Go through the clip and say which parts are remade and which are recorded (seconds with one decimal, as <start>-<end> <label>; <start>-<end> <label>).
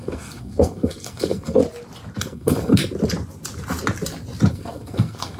0.0-1.6 remade; 1.6-2.2 recorded; 2.2-2.8 remade; 2.8-4.5 recorded; 4.5-5.4 remade